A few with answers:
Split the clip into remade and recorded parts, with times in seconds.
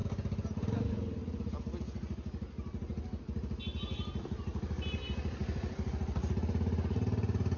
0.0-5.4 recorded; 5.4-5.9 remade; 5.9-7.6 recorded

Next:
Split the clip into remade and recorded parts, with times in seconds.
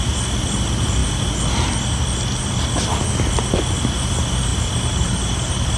0.0-4.5 recorded; 4.5-5.8 remade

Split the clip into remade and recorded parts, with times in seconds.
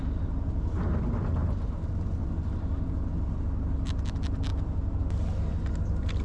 0.0-6.2 recorded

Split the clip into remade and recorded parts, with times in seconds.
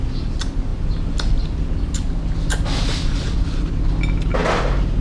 0.0-5.0 recorded